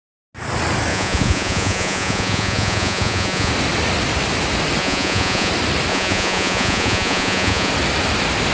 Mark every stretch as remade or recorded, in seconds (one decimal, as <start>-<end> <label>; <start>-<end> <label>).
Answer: 0.0-0.9 recorded; 0.9-3.5 remade; 3.5-4.8 recorded; 4.8-5.5 remade; 5.5-5.9 recorded; 5.9-7.7 remade; 7.7-8.5 recorded

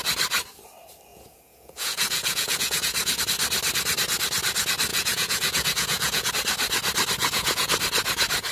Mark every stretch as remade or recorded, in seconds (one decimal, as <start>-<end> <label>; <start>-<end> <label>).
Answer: 0.0-1.1 recorded; 1.1-3.2 remade; 3.2-4.9 recorded; 4.9-6.3 remade; 6.3-7.2 recorded; 7.2-7.7 remade; 7.7-8.5 recorded

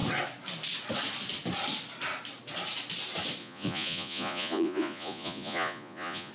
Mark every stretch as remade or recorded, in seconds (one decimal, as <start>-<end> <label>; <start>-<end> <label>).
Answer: 0.0-3.4 recorded; 3.4-6.3 remade